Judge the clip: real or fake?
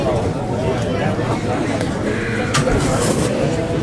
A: real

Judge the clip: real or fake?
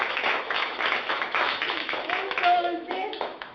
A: fake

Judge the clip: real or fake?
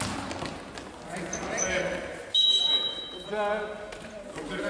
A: real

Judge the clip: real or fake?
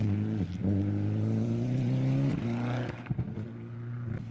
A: real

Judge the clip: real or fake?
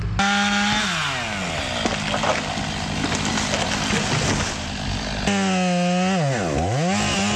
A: real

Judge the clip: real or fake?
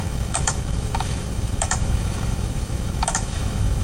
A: fake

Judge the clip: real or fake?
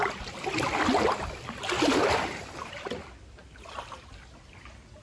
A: real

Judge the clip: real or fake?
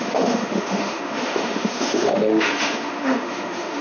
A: fake